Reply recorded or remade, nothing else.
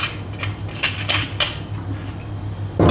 recorded